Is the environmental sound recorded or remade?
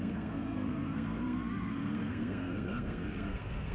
remade